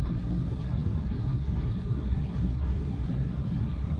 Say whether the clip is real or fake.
fake